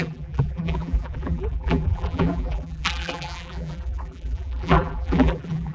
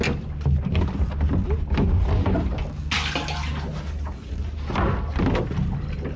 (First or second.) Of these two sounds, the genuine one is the second